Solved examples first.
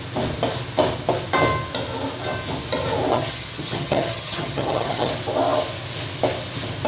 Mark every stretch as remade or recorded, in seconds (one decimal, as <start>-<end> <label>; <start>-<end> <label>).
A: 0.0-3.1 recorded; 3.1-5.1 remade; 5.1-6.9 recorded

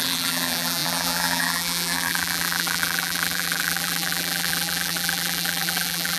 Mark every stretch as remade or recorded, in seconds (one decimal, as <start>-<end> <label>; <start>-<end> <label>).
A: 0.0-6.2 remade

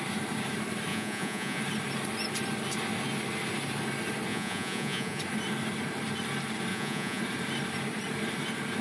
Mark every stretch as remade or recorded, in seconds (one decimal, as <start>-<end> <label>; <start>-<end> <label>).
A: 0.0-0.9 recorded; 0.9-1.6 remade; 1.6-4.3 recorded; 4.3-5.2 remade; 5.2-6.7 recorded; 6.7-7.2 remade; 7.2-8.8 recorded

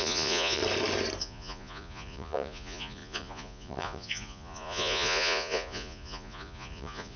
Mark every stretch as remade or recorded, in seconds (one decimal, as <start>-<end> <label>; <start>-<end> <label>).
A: 0.0-0.6 remade; 0.6-1.2 recorded; 1.2-7.2 remade

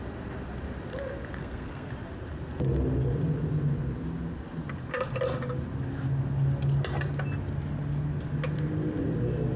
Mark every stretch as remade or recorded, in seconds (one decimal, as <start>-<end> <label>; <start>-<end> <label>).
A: 0.0-1.4 recorded; 1.4-1.9 remade; 1.9-9.6 recorded

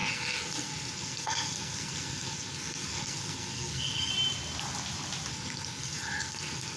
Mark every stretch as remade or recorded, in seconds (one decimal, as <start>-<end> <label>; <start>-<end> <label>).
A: 0.0-4.1 remade; 4.1-5.3 recorded; 5.3-6.8 remade